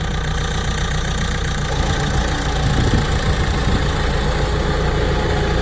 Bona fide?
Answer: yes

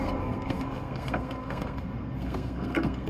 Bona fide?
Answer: no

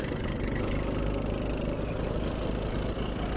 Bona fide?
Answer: yes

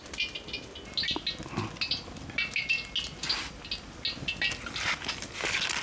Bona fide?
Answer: yes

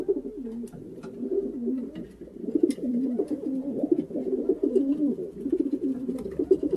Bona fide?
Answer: yes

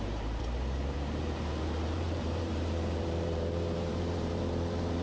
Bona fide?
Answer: no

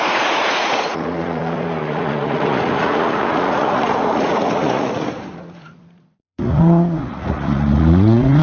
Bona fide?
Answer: no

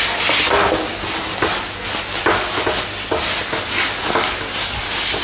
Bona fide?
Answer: yes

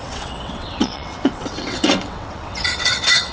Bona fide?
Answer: no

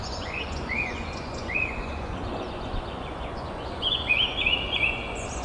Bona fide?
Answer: no